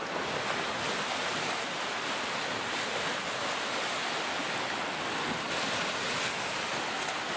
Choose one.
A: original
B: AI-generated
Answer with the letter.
A